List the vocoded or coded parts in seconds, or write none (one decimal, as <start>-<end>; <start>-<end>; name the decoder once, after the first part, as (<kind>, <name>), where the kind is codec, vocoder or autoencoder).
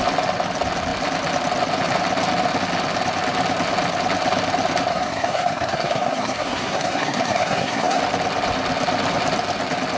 4.9-8.0 (codec, SNAC)